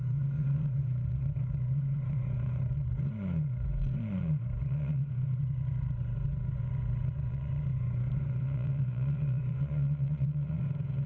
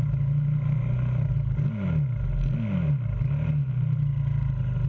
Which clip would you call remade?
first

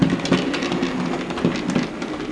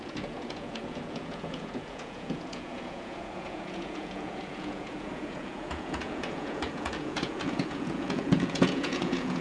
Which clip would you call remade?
second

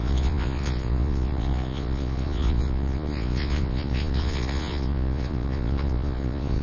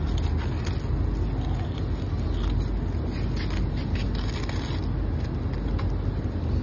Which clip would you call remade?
first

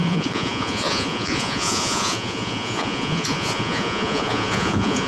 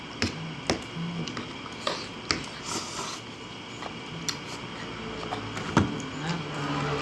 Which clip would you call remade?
first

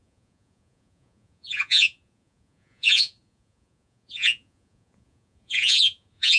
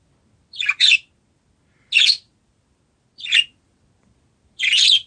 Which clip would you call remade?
first